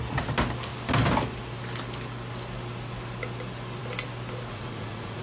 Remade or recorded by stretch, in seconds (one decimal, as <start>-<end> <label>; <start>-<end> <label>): 0.0-4.5 recorded; 4.5-5.2 remade